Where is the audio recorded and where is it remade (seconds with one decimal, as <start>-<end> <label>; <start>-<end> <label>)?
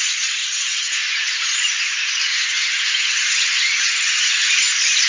0.0-0.4 recorded; 0.4-0.9 remade; 0.9-2.3 recorded; 2.3-4.5 remade; 4.5-5.1 recorded